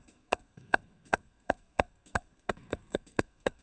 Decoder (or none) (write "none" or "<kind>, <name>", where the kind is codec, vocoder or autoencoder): codec, SNAC